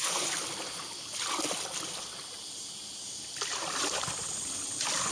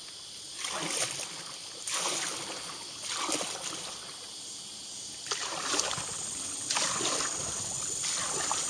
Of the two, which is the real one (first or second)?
second